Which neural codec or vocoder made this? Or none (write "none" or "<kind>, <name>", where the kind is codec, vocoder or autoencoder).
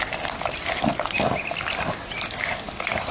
none